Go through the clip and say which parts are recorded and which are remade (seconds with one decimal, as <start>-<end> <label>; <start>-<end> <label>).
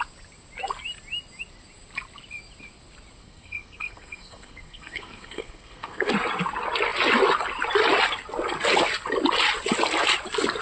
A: 0.0-3.2 recorded; 3.2-6.1 remade; 6.1-10.6 recorded